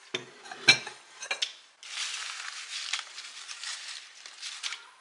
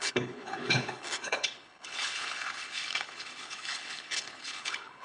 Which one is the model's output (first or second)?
second